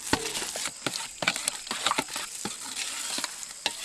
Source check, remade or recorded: recorded